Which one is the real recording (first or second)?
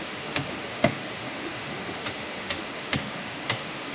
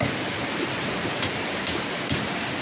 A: second